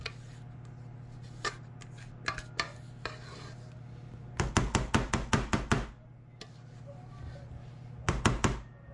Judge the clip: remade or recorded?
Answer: recorded